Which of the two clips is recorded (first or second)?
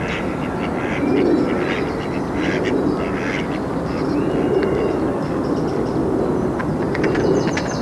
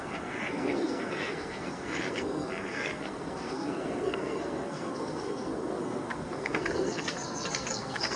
first